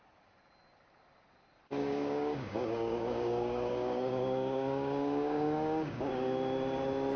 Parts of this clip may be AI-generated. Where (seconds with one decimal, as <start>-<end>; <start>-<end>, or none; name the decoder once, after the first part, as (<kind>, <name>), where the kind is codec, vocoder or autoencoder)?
1.8-6.1 (codec, DAC)